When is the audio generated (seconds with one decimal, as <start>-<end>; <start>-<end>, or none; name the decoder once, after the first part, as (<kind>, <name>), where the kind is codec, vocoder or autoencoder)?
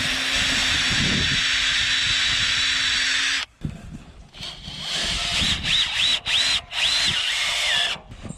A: 0.0-0.6 (vocoder, BigVGAN v2); 1.6-3.2; 5.3-8.4